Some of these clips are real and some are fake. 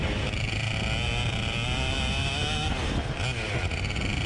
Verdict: real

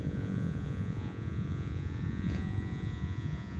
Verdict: fake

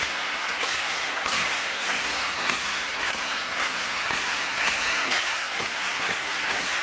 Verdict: fake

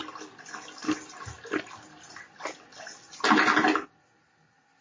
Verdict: real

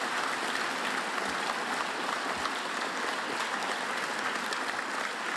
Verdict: real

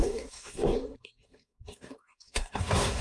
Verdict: fake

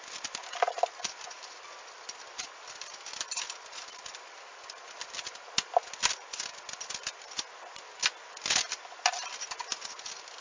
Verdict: real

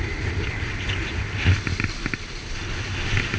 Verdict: real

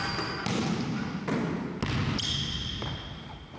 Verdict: real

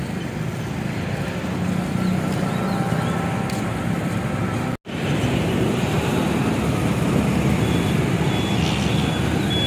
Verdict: real